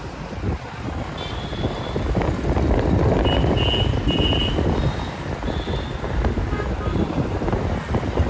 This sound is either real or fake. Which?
real